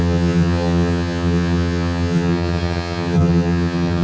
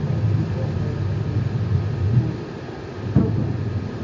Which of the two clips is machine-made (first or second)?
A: first